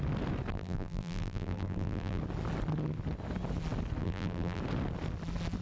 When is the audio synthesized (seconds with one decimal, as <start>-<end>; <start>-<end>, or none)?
0.5-2.2; 4.0-4.6